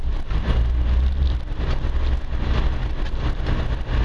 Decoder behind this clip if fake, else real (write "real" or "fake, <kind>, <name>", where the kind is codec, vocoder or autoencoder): real